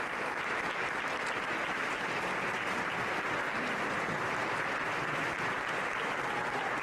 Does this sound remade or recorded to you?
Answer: recorded